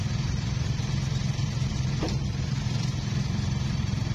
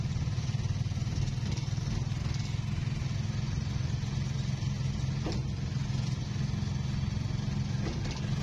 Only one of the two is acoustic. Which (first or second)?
second